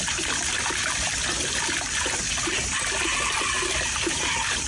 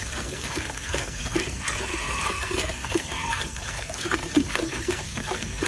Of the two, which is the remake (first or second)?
second